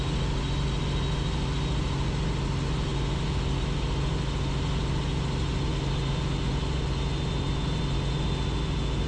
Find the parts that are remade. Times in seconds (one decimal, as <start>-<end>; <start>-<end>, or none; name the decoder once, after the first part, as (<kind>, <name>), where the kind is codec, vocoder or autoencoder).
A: none